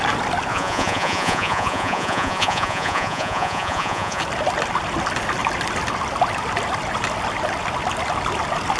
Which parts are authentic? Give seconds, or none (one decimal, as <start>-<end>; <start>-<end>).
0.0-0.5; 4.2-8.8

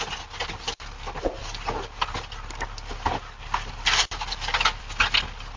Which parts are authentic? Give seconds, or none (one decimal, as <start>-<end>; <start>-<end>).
0.0-5.6

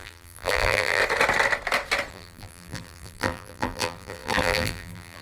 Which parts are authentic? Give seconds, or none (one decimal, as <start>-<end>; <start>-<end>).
1.0-2.1

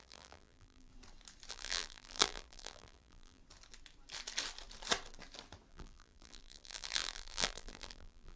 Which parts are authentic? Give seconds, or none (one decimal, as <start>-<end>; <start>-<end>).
0.9-1.5; 3.4-5.7

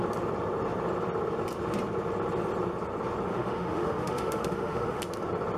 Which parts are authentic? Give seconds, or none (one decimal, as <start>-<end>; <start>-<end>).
0.0-3.3; 5.0-5.6

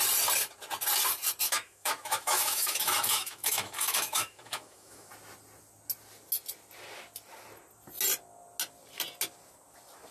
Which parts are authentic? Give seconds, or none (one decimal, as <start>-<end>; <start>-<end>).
0.0-1.4; 5.1-10.1